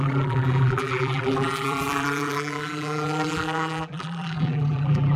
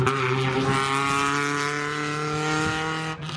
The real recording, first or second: second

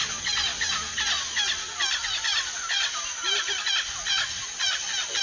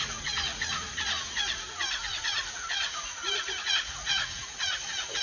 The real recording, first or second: first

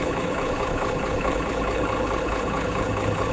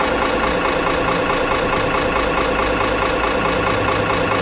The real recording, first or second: second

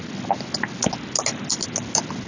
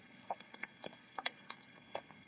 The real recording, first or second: first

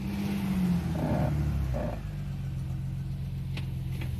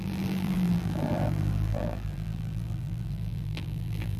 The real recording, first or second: first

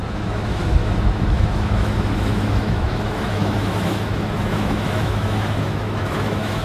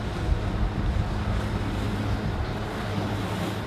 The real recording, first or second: second